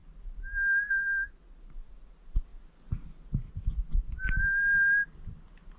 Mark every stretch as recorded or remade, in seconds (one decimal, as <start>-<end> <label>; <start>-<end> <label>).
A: 0.0-5.8 recorded